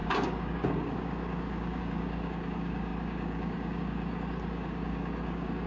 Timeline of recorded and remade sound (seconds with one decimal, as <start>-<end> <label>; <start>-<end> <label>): 0.0-5.7 remade